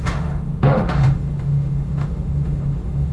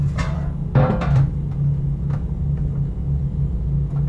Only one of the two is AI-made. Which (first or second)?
first